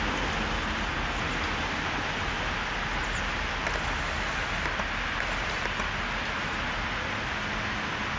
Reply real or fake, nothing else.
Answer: real